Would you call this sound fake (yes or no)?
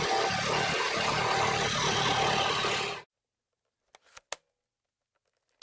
no